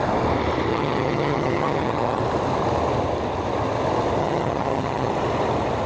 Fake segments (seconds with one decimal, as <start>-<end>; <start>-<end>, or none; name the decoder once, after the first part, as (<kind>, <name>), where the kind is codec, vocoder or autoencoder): 0.7-2.2 (vocoder, HiFi-GAN); 4.2-5.1